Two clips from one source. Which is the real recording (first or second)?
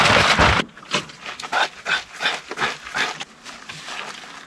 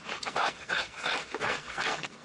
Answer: first